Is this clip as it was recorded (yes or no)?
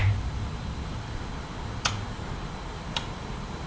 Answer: yes